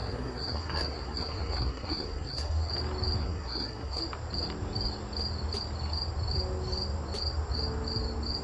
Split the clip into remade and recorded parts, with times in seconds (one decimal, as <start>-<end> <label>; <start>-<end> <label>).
0.0-2.7 remade; 2.7-3.2 recorded; 3.2-4.0 remade; 4.0-8.4 recorded